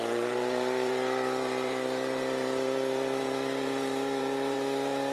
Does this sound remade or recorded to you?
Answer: remade